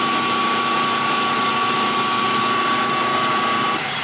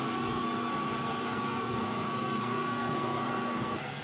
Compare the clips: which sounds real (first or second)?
first